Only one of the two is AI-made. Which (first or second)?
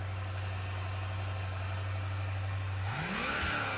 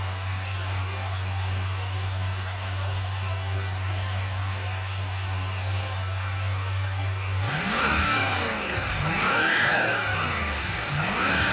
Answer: second